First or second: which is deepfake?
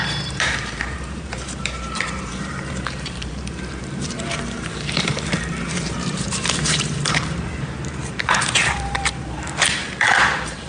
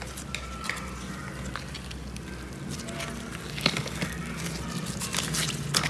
first